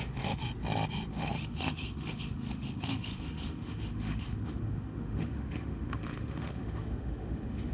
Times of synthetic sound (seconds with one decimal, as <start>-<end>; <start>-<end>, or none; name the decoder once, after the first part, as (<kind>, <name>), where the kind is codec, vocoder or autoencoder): 0.0-0.4 (autoencoder, DAC-VAE); 1.1-7.7